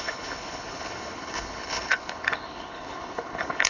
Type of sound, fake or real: fake